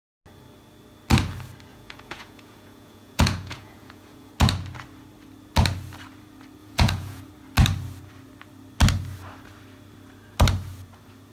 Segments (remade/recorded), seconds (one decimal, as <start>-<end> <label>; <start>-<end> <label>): 0.0-1.7 recorded; 1.7-4.3 remade; 4.3-6.6 recorded; 6.6-7.3 remade; 7.3-11.3 recorded